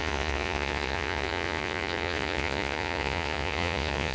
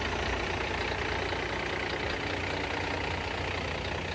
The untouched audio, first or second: second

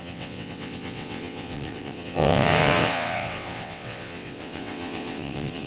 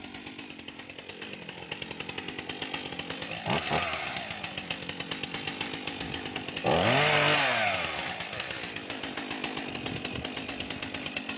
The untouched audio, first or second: second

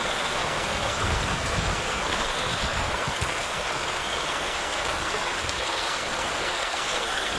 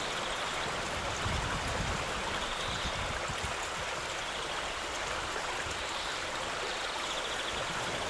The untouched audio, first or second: second